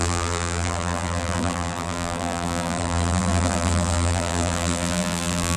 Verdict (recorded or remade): remade